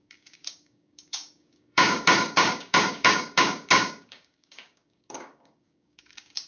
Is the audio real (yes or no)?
no